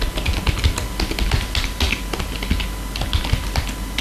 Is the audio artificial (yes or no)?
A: no